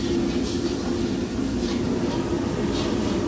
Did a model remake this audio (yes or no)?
no